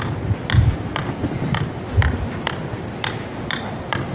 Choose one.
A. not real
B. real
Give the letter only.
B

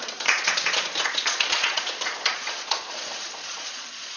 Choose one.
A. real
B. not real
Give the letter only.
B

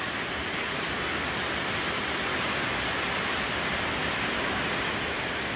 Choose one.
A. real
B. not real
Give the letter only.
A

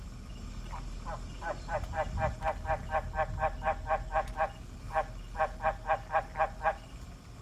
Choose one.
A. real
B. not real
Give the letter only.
A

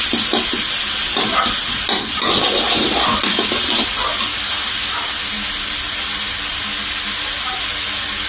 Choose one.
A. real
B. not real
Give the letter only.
A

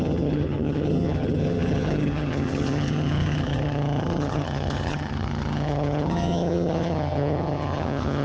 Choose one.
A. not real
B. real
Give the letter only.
A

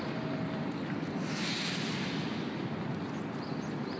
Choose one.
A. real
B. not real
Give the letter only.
A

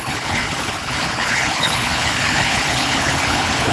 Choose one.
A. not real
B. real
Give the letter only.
A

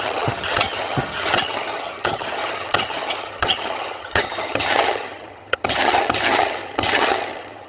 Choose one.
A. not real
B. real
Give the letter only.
A